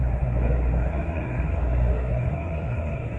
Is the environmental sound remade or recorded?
remade